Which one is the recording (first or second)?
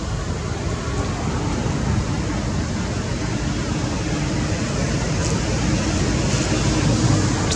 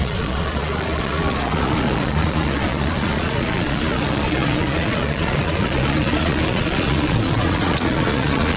first